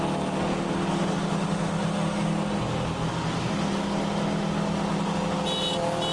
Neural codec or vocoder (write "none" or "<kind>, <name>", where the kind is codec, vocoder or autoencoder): none